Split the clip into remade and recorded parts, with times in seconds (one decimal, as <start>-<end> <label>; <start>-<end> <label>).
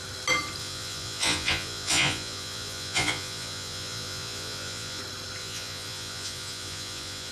0.0-0.6 recorded; 0.6-5.0 remade; 5.0-5.4 recorded; 5.4-7.3 remade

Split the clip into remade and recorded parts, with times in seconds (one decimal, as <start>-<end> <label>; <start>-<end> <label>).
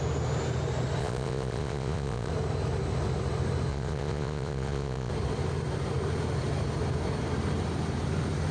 0.0-1.0 recorded; 1.0-2.3 remade; 2.3-3.7 recorded; 3.7-5.1 remade; 5.1-8.5 recorded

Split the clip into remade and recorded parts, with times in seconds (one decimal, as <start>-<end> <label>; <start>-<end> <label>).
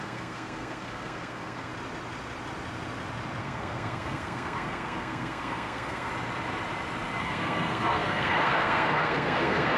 0.0-1.7 remade; 1.7-3.4 recorded; 3.4-6.1 remade; 6.1-7.2 recorded; 7.2-9.8 remade